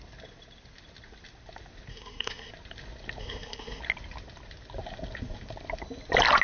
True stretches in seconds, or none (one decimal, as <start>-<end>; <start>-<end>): 0.0-1.9; 2.5-3.2; 3.8-6.4